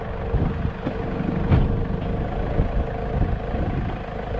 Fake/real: real